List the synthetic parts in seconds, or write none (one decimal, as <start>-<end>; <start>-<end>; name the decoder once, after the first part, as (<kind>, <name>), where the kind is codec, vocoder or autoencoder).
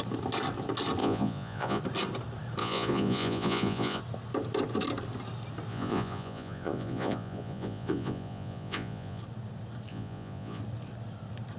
1.0-1.8 (vocoder, Vocos); 2.6-4.0; 5.7-9.2; 9.9-10.6